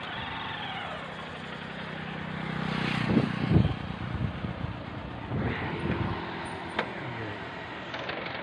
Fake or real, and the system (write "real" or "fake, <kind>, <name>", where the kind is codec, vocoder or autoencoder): real